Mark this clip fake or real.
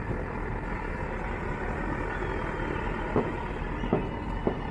real